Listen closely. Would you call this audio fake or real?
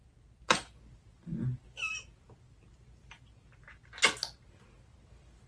real